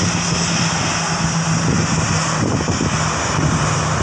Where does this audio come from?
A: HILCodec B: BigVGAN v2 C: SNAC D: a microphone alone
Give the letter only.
D